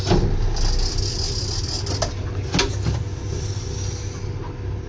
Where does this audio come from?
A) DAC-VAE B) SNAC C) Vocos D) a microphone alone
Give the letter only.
D